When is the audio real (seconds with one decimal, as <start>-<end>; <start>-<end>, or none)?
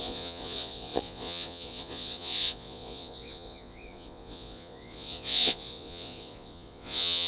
none